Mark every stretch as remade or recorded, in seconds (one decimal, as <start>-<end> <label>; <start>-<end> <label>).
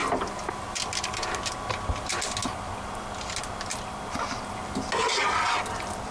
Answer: 0.0-6.1 recorded